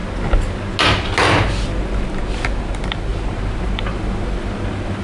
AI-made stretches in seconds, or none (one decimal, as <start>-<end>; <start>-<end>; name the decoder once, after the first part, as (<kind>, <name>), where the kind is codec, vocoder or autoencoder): 3.1-3.9 (vocoder, BigVGAN v2)